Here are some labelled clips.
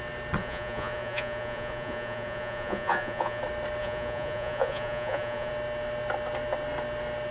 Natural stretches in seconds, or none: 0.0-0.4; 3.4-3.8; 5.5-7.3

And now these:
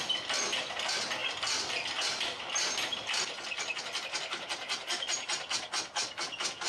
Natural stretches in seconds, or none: 0.0-6.7

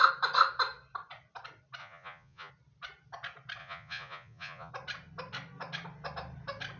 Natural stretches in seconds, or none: 0.0-1.8; 2.5-3.6; 4.7-6.8

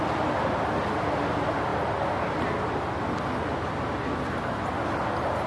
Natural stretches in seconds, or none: 0.0-5.5

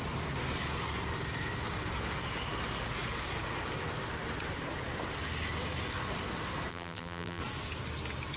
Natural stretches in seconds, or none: 0.0-6.7; 7.4-8.4

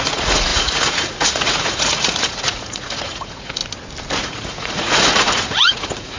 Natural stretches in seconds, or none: 3.6-4.2